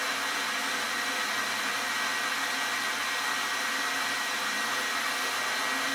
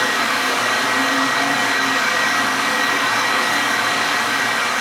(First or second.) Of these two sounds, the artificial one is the second